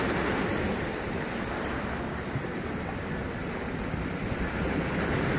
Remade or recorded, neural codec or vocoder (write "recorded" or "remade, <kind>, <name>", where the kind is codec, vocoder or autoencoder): recorded